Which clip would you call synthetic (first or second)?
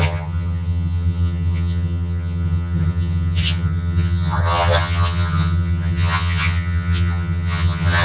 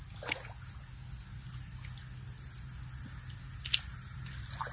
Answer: first